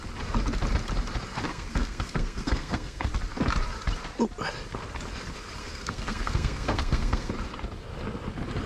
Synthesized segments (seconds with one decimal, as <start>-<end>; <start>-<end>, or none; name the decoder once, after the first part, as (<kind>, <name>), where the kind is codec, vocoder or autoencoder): 1.5-3.1 (codec, SNAC); 5.6-7.3